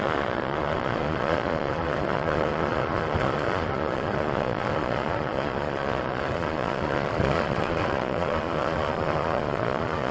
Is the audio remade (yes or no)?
yes